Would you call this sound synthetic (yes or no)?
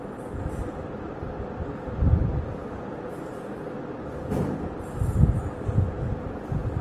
no